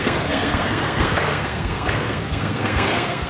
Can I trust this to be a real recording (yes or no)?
no